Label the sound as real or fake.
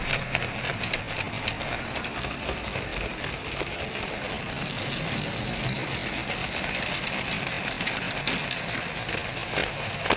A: real